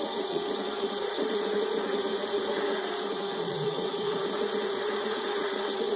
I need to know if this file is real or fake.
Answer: fake